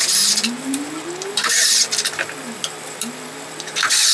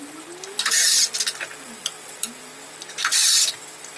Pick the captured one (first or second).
second